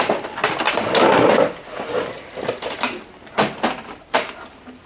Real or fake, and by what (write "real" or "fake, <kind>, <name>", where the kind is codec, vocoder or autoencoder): real